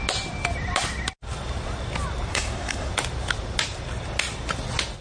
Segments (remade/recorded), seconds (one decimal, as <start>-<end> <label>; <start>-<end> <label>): 0.0-2.3 recorded; 2.3-2.9 remade; 2.9-5.0 recorded